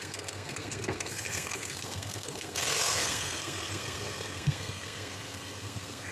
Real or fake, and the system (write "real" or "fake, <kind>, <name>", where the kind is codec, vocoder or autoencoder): fake, codec, SNAC